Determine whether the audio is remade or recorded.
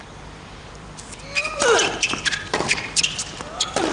remade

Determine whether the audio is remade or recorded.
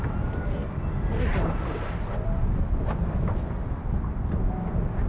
recorded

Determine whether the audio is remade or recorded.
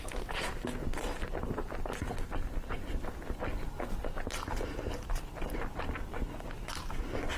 recorded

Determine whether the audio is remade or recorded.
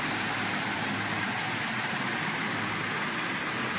recorded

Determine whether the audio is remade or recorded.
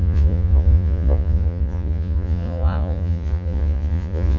remade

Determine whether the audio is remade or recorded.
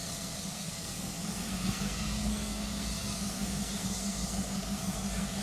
remade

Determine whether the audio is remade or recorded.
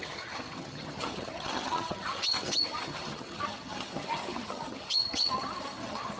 remade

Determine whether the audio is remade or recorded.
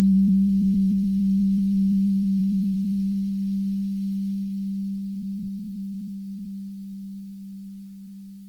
remade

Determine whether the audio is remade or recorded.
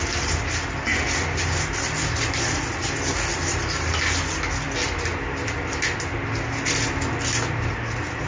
recorded